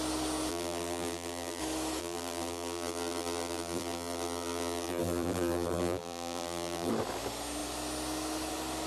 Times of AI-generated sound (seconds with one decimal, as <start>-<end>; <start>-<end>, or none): 0.5-1.6; 2.0-6.9